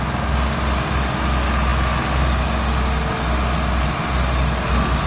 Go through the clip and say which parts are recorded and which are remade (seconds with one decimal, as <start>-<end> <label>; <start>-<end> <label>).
0.0-5.1 recorded